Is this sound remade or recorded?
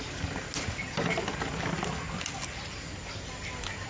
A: recorded